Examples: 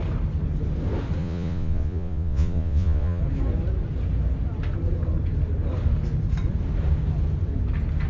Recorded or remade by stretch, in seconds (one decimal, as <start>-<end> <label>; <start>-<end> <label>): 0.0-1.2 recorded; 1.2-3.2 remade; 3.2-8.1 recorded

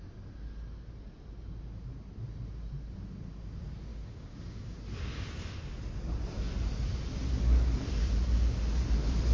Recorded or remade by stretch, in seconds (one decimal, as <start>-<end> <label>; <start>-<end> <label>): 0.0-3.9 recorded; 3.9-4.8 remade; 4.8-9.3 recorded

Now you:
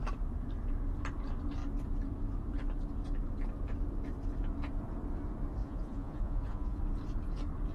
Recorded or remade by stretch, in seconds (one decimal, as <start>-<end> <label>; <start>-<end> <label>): 0.0-5.6 recorded; 5.6-6.8 remade; 6.8-7.7 recorded

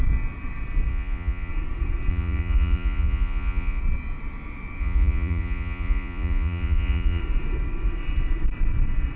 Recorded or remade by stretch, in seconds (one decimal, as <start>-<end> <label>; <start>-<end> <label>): 0.0-0.9 recorded; 0.9-1.5 remade; 1.5-2.1 recorded; 2.1-3.8 remade; 3.8-4.8 recorded; 4.8-7.2 remade; 7.2-9.2 recorded